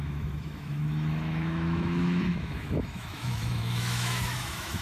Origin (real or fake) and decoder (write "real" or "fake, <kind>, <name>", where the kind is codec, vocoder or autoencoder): fake, autoencoder, DAC-VAE